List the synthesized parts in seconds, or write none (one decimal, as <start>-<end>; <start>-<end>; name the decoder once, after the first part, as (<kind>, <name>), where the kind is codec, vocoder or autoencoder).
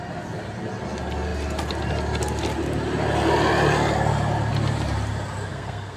5.5-6.0 (codec, SNAC)